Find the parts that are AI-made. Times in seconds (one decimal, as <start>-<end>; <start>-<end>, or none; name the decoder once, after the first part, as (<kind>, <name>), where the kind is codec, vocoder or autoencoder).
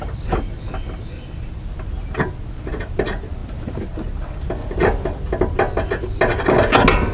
none